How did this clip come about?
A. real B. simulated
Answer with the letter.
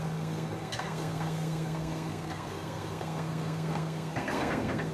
B